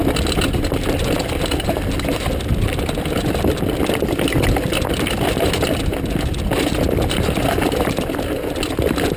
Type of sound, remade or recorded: recorded